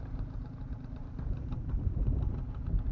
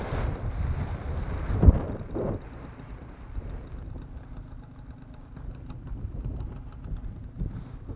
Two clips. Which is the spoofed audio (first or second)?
first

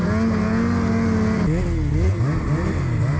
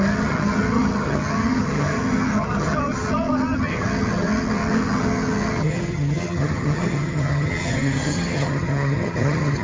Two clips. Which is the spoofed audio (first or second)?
second